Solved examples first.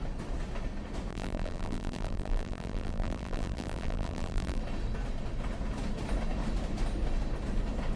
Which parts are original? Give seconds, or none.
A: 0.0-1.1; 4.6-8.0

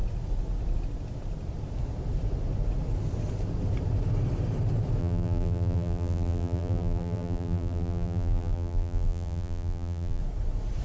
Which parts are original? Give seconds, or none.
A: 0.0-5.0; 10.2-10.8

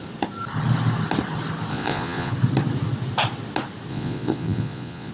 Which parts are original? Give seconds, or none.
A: 0.0-1.7; 2.3-3.9

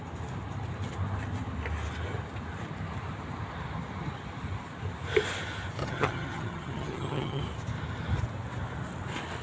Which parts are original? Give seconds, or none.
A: 0.0-5.8; 7.4-9.4

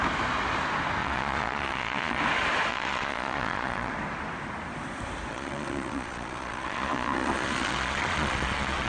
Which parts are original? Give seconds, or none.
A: 0.0-1.0; 2.2-2.7; 3.9-5.3

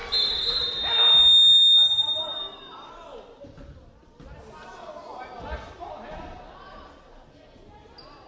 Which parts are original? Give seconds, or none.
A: 0.0-8.3